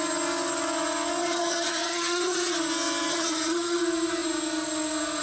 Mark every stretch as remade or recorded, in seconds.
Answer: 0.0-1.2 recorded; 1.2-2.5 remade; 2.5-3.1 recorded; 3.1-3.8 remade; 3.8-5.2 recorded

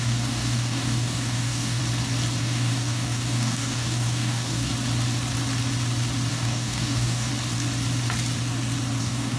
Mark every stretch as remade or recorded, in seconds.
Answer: 0.0-1.8 remade; 1.8-2.4 recorded; 2.4-4.7 remade; 4.7-6.3 recorded; 6.3-7.3 remade; 7.3-9.0 recorded; 9.0-9.4 remade

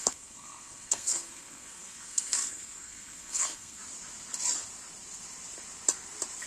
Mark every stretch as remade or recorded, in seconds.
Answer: 0.0-3.8 remade; 3.8-6.5 recorded

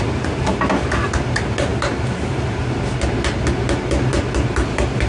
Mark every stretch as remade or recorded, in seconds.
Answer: 0.0-5.1 recorded